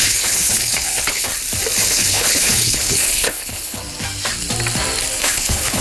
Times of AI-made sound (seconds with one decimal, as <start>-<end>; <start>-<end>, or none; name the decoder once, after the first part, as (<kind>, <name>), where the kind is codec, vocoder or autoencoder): 0.0-1.3 (codec, HILCodec); 1.9-3.8; 5.2-5.8